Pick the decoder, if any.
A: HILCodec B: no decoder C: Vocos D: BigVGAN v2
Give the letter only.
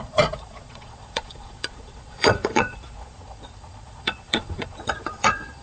C